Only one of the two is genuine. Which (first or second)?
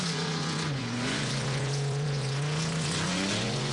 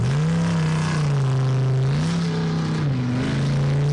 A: second